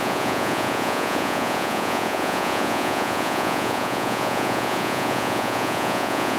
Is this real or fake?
fake